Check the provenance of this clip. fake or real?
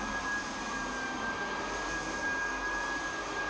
real